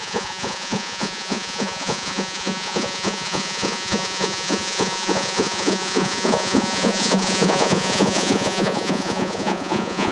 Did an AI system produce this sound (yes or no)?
yes